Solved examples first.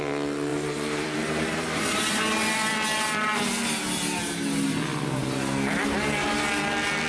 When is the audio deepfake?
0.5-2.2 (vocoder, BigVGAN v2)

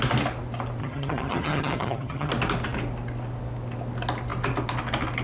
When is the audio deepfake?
0.8-2.3 (vocoder, HiFi-GAN)

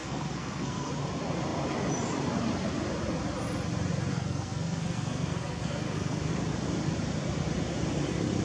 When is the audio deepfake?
0.0-0.9 (codec, SNAC); 4.1-6.3

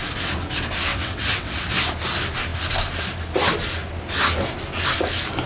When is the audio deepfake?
0.9-1.7 (vocoder, WaveNeXt)

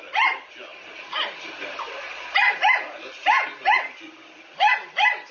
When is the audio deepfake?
0.7-3.9 (vocoder, BigVGAN v2)

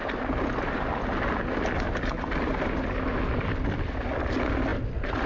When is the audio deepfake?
none

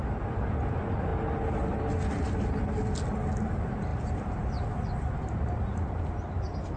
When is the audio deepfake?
none